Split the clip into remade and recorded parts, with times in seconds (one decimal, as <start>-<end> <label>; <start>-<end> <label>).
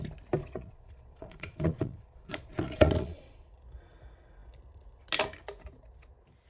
0.0-0.4 recorded; 0.4-3.6 remade; 3.6-6.5 recorded